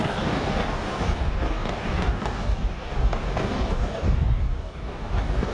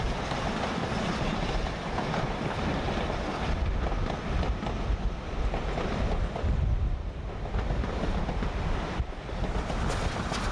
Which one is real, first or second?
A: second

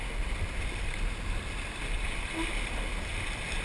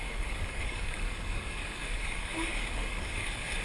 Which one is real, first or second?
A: first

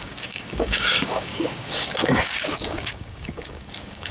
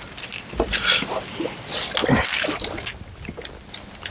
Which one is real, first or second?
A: second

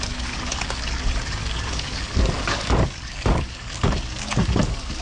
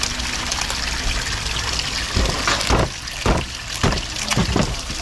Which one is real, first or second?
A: second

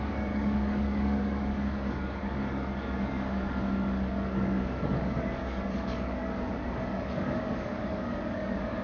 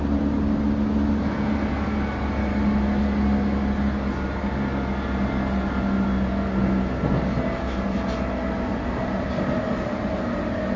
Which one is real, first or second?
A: second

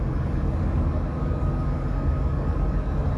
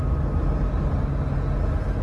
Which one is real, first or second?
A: second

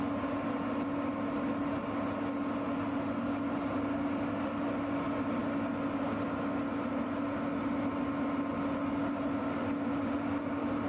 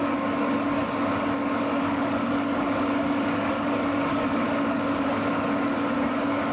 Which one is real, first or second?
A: first